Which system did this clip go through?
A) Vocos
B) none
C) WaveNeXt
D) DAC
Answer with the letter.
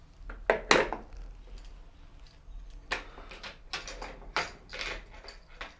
B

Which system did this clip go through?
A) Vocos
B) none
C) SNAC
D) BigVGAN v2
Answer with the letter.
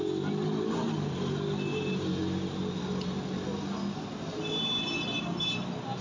B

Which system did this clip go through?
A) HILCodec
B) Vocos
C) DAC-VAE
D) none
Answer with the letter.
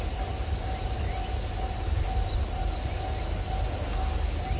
D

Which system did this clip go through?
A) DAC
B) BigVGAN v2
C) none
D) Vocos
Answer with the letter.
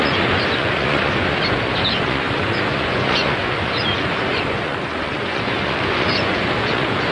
D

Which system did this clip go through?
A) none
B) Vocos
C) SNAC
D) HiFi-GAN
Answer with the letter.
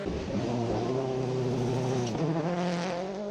A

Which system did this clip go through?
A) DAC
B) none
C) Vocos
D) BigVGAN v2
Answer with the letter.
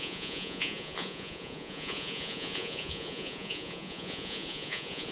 C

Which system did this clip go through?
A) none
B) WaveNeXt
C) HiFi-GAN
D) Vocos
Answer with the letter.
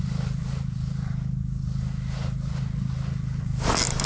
A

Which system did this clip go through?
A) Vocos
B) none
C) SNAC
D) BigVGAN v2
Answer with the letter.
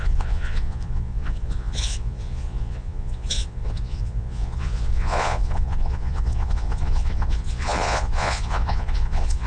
A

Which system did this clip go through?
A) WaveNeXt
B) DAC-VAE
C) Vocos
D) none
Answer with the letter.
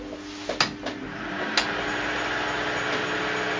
D